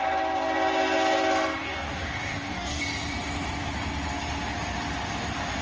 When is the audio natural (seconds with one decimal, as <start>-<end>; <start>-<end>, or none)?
0.0-1.6; 2.8-5.6

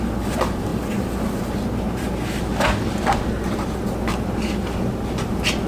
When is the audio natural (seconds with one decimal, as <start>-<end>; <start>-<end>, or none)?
0.0-5.7

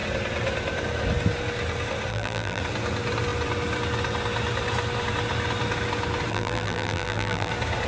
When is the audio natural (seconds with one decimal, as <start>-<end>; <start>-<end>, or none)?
0.0-2.1; 2.6-6.3; 7.5-7.9